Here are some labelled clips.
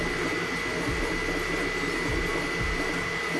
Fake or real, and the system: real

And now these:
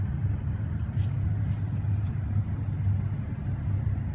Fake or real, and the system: real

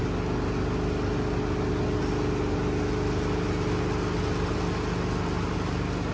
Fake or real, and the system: real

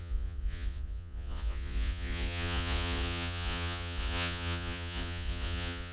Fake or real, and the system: fake, vocoder, Vocos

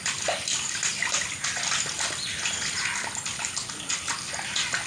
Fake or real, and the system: real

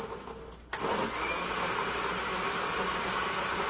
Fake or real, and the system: real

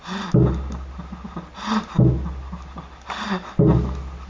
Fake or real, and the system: real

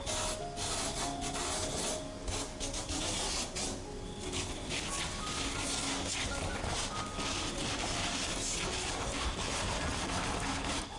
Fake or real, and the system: real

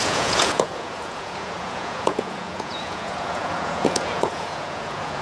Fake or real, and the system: fake, vocoder, Vocos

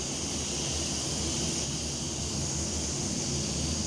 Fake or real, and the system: real